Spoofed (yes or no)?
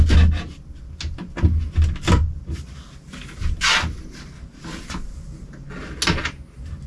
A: no